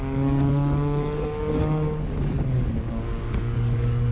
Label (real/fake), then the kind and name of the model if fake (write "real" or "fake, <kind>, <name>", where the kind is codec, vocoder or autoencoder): fake, codec, DAC